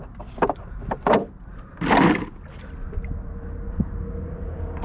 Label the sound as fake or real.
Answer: real